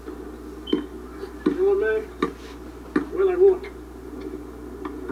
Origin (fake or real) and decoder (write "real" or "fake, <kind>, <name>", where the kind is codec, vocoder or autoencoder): real